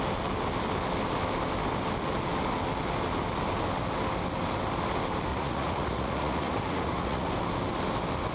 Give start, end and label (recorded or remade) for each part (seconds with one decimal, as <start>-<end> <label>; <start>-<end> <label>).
0.0-5.3 recorded; 5.3-7.3 remade; 7.3-8.3 recorded